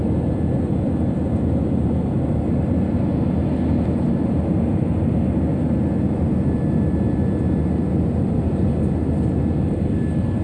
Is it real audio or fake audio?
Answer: real